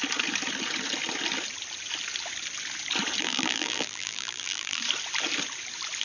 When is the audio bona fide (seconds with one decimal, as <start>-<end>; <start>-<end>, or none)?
0.0-3.2; 4.8-6.0